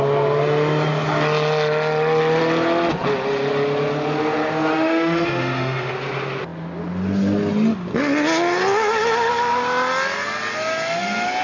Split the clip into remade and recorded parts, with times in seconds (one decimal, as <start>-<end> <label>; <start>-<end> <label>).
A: 0.0-4.7 recorded; 4.7-5.9 remade; 5.9-11.4 recorded